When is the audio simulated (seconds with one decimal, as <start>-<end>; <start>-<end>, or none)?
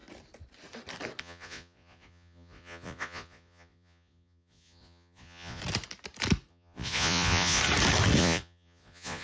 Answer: 1.2-5.6; 6.5-7.6; 8.2-9.2